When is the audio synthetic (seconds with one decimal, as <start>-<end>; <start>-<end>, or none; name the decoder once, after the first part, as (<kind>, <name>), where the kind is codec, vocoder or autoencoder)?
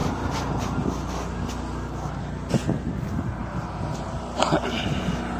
none